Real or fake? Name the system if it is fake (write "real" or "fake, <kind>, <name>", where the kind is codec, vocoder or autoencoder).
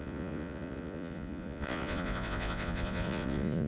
fake, vocoder, Vocos